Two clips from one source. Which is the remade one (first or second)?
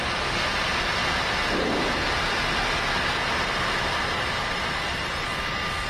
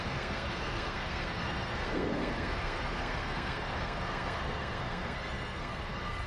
second